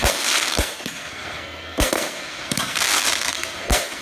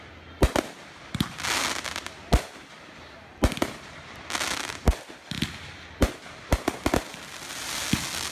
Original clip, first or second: second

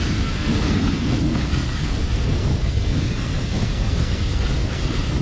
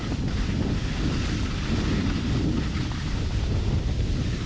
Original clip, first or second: second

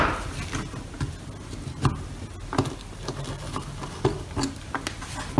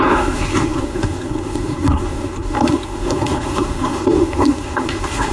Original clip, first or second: first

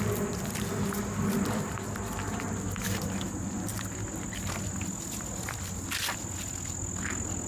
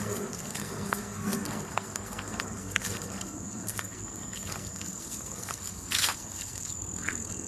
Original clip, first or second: first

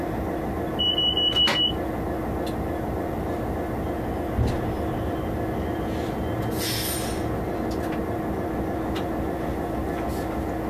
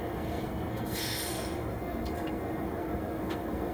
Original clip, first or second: first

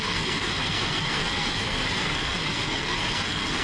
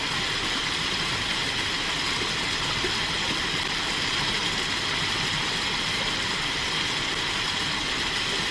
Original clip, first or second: second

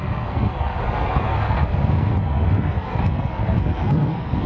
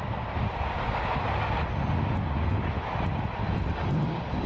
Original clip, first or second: second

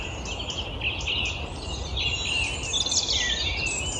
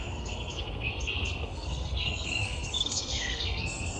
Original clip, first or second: first